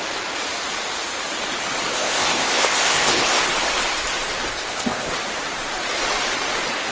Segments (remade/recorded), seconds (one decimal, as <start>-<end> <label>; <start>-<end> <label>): 0.0-1.9 recorded; 1.9-3.4 remade; 3.4-4.5 recorded; 4.5-5.1 remade; 5.1-6.9 recorded